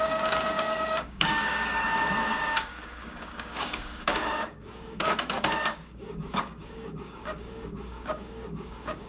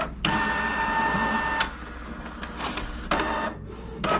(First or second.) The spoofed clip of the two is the first